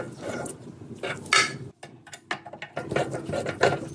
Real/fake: real